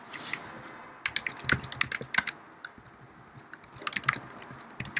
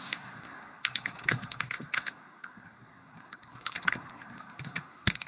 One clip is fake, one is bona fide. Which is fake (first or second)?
second